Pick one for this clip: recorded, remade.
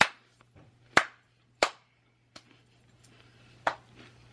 remade